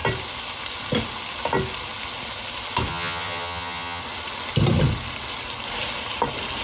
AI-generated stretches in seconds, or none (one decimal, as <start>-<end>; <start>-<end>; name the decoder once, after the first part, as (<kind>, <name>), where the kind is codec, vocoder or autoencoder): 2.9-4.0 (vocoder, HiFi-GAN)